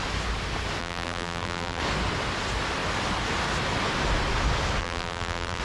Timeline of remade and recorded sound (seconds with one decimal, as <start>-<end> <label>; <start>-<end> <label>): 0.0-0.8 recorded; 0.8-1.8 remade; 1.8-4.8 recorded; 4.8-5.6 remade